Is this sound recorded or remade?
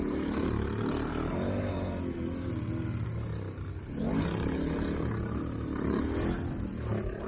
recorded